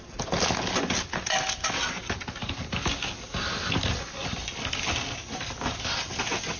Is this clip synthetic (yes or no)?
no